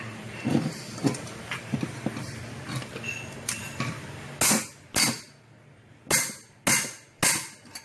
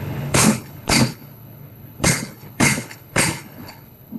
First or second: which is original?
first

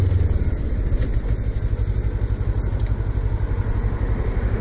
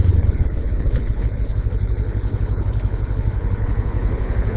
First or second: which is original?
first